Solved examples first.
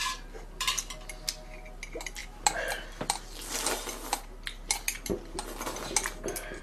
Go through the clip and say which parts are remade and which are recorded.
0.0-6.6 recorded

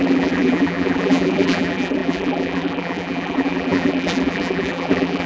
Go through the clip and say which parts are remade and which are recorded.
0.0-5.3 remade

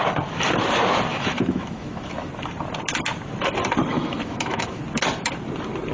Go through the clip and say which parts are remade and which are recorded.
0.0-1.1 recorded; 1.1-2.3 remade; 2.3-3.9 recorded; 3.9-4.8 remade; 4.8-5.9 recorded